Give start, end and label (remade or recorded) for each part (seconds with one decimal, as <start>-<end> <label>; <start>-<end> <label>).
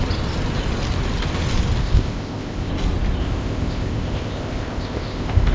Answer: 0.0-1.8 recorded; 1.8-2.7 remade; 2.7-3.2 recorded; 3.2-5.5 remade